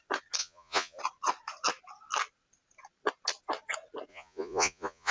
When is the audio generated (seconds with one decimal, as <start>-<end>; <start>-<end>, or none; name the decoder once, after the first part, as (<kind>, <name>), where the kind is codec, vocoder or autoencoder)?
0.4-1.0 (vocoder, Vocos); 4.1-5.1